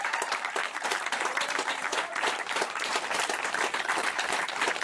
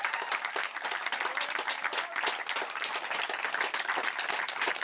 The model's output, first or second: first